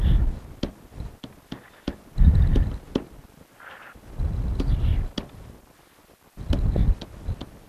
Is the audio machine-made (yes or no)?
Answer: no